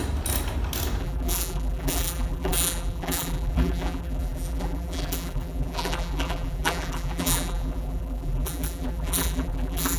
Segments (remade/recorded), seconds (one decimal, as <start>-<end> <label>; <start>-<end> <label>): 0.0-1.0 recorded; 1.0-10.0 remade